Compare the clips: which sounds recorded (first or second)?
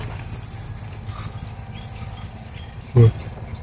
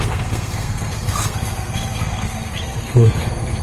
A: first